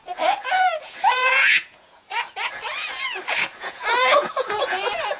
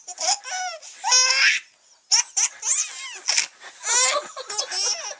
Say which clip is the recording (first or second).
second